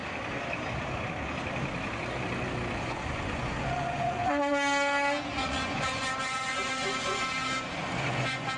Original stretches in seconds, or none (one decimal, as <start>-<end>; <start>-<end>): 0.0-2.8; 4.2-5.4